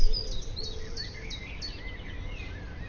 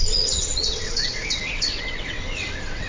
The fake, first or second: second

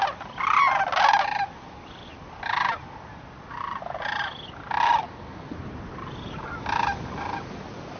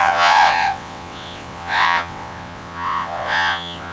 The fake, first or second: second